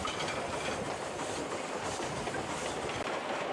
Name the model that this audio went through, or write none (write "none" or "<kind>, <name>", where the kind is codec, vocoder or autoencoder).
none